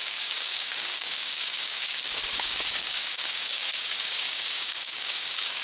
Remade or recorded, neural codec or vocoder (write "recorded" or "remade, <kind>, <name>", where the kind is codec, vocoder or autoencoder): remade, codec, DAC